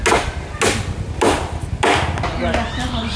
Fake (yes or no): no